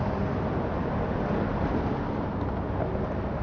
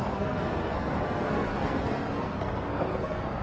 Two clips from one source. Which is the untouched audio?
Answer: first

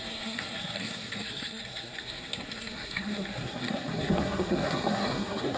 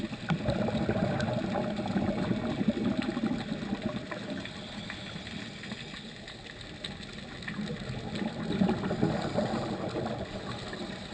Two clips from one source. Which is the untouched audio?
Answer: second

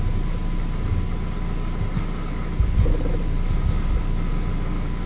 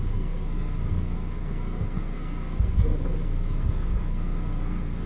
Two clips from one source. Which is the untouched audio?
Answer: first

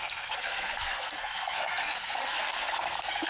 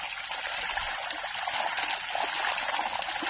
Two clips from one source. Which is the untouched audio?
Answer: second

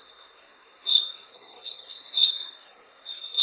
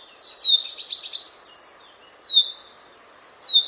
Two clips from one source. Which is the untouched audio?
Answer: second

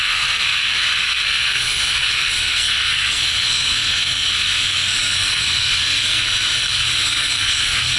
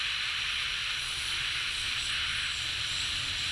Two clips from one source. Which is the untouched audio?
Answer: second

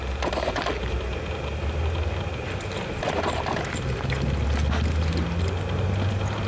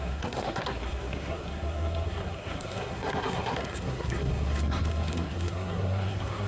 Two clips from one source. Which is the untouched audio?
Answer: first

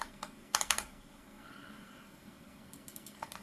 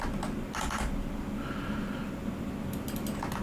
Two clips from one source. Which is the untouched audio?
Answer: second